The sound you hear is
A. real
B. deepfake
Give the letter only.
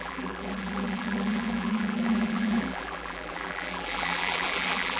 B